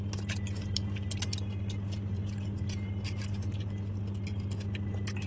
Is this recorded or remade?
recorded